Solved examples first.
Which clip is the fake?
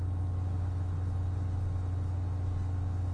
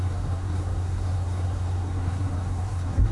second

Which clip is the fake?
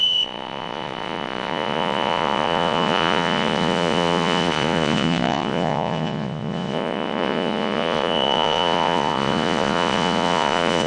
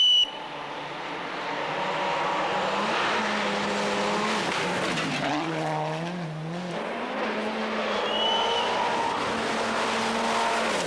first